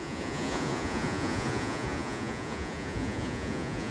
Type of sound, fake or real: fake